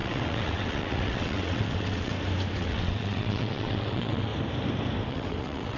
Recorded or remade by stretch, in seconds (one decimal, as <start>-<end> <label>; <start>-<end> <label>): 0.0-2.1 remade; 2.1-2.6 recorded; 2.6-4.3 remade; 4.3-5.1 recorded; 5.1-5.8 remade